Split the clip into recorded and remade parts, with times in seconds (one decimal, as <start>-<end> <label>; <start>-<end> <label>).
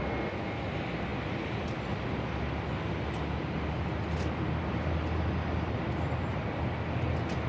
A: 0.0-7.5 recorded